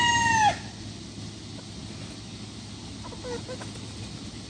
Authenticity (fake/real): real